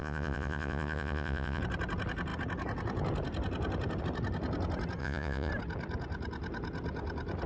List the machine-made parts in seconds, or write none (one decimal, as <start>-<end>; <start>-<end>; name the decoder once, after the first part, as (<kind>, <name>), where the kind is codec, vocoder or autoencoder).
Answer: 0.0-1.6 (vocoder, Vocos); 5.0-5.5